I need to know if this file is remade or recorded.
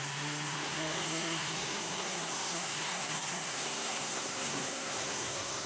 remade